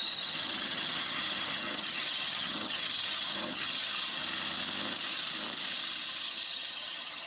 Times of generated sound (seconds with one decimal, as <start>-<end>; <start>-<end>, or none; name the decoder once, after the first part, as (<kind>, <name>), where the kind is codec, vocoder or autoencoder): 0.0-4.2 (vocoder, HiFi-GAN); 6.2-7.3